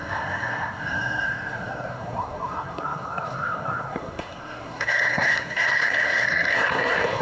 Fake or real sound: fake